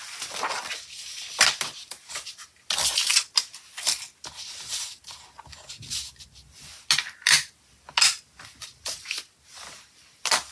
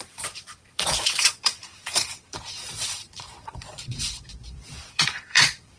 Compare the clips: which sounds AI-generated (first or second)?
second